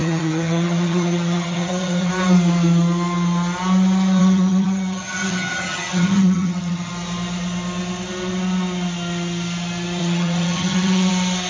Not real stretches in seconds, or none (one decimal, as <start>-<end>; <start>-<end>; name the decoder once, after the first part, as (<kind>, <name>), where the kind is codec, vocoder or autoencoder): 0.0-2.1 (vocoder, HiFi-GAN); 4.2-6.9; 10.0-11.1